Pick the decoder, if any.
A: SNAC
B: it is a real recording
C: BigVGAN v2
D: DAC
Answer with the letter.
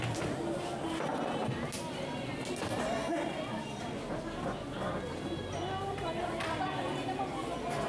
B